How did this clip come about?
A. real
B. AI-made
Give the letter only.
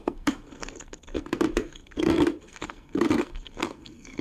B